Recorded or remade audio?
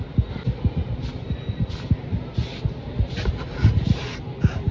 recorded